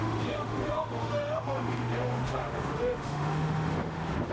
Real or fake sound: fake